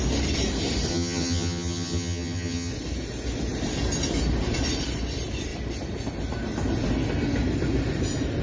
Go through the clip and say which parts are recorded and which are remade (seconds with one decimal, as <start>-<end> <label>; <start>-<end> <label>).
0.0-0.9 recorded; 0.9-2.7 remade; 2.7-8.4 recorded